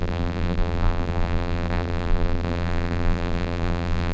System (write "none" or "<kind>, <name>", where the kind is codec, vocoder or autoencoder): vocoder, BigVGAN v2